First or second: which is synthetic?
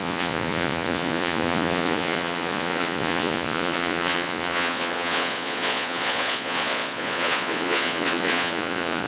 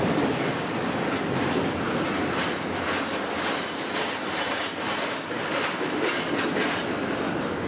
first